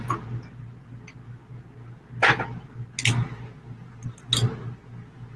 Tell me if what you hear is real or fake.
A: real